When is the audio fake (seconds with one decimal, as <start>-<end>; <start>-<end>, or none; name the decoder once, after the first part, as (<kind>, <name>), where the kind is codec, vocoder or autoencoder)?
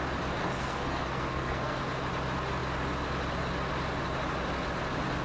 0.4-1.8 (codec, SNAC)